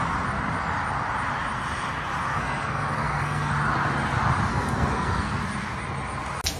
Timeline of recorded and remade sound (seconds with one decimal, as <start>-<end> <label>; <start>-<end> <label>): 0.0-2.3 recorded; 2.3-3.5 remade; 3.5-4.5 recorded; 4.5-5.3 remade; 5.3-6.6 recorded